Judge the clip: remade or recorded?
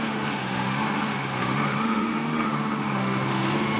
remade